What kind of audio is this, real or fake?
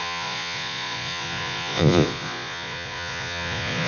fake